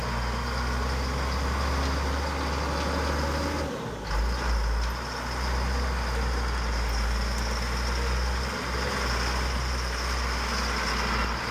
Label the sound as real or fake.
real